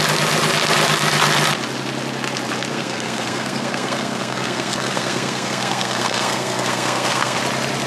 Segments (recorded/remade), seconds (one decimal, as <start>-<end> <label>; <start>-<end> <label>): 0.0-2.7 recorded; 2.7-7.4 remade; 7.4-7.9 recorded